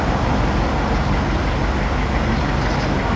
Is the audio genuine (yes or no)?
yes